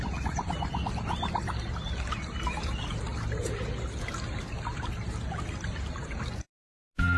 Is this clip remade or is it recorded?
recorded